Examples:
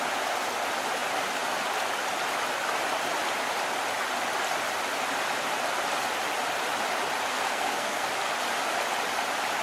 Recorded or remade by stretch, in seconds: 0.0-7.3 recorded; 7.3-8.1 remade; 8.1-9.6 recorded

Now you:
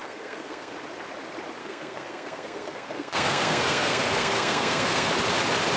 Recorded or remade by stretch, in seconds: 0.0-0.7 remade; 0.7-1.6 recorded; 1.6-5.1 remade; 5.1-5.8 recorded

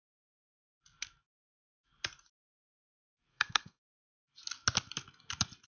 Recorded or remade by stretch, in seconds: 0.0-3.3 recorded; 3.3-3.9 remade; 3.9-5.7 recorded

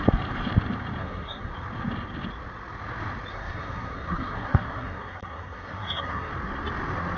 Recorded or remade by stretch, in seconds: 0.0-1.0 recorded; 1.0-1.5 remade; 1.5-3.3 recorded; 3.3-6.3 remade; 6.3-7.2 recorded

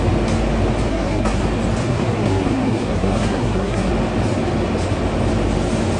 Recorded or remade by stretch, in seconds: 0.0-0.9 recorded; 0.9-1.4 remade; 1.4-1.8 recorded; 1.8-3.9 remade; 3.9-6.0 recorded

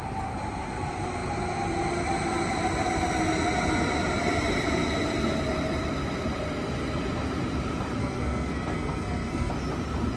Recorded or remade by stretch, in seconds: 0.0-8.0 recorded; 8.0-9.5 remade; 9.5-10.2 recorded